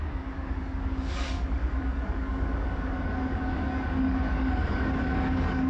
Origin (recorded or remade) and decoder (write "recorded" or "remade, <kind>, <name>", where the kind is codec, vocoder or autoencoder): remade, codec, DAC